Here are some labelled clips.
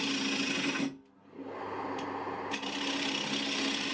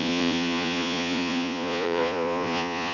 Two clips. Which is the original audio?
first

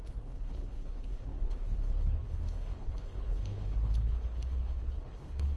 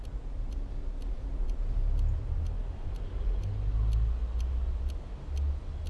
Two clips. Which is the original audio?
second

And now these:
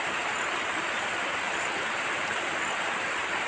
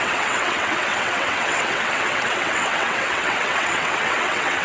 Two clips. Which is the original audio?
first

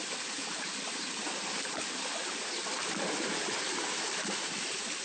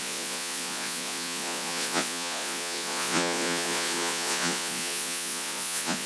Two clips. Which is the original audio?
first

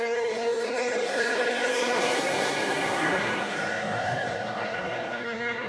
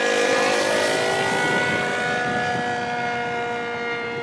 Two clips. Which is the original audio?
second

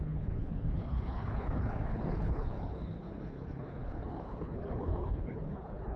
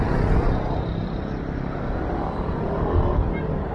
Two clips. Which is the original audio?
second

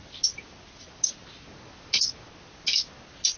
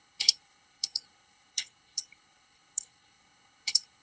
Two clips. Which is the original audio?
first